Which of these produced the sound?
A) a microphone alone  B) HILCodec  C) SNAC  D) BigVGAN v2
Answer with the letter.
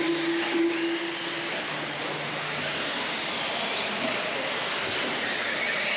A